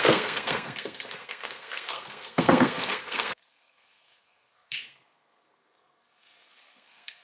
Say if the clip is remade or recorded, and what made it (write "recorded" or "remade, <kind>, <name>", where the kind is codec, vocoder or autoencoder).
remade, codec, SNAC